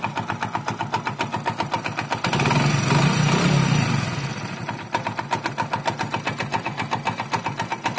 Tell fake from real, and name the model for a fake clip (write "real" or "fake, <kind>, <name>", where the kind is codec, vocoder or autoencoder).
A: real